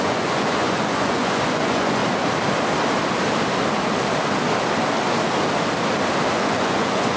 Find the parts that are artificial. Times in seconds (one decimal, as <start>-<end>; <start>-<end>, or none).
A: 0.0-2.0; 6.3-7.2